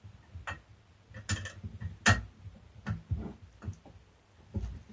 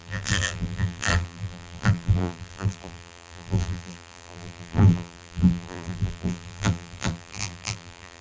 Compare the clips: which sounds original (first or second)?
first